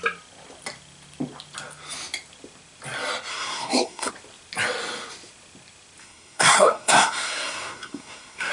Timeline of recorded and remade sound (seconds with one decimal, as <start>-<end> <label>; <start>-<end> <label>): 0.0-3.3 recorded; 3.3-4.1 remade; 4.1-6.0 recorded; 6.0-8.5 remade